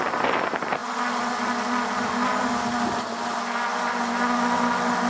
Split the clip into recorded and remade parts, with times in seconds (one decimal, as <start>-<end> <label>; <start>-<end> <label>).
0.0-5.1 recorded